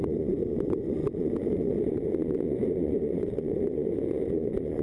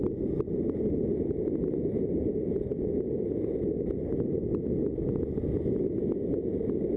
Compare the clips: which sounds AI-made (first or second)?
first